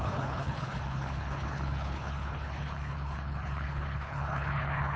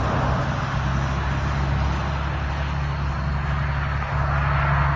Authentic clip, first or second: second